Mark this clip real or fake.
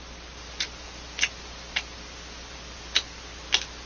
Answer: real